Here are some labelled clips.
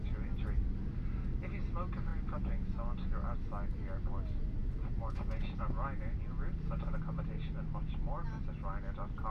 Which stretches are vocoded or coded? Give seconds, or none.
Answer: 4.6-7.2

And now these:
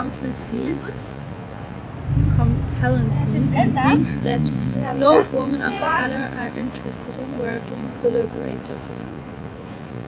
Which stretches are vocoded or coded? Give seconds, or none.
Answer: 0.0-1.8; 4.0-10.1

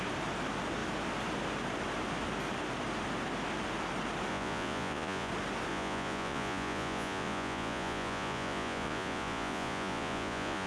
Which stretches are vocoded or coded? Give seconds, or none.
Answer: 4.3-5.3; 5.7-10.7

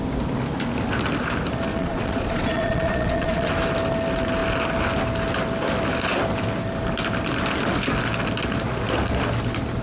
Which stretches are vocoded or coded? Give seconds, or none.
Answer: 1.7-3.5

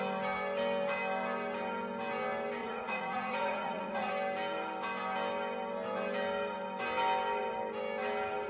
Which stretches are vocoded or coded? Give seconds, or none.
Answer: 2.6-4.1

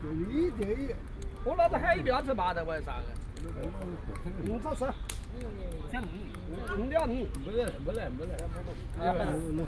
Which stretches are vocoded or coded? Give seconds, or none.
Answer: none

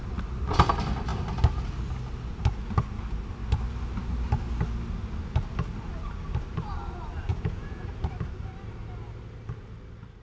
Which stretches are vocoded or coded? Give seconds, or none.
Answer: 7.3-7.9